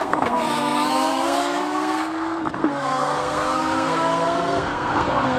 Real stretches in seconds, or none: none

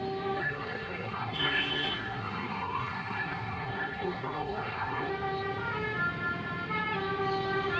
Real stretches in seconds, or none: 0.0-0.4; 5.1-7.8

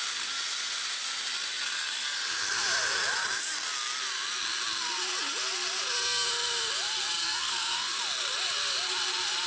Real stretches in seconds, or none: 0.0-7.2; 8.0-9.5

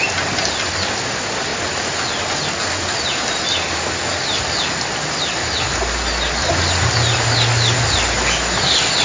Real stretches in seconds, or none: 0.0-9.0

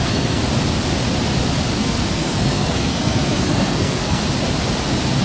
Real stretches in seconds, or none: 0.4-1.8; 4.2-5.2